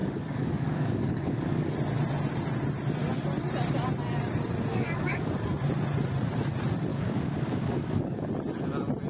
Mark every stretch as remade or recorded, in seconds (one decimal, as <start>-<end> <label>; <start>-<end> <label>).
0.0-1.7 remade; 1.7-4.7 recorded; 4.7-5.3 remade; 5.3-6.9 recorded; 6.9-8.3 remade; 8.3-9.1 recorded